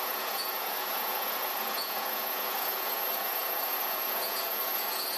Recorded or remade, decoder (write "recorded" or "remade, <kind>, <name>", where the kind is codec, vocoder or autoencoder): remade, vocoder, Vocos